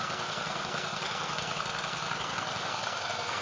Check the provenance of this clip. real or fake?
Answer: fake